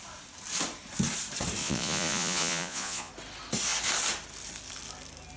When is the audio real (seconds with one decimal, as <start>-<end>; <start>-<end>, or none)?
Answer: 0.0-1.6; 3.1-5.4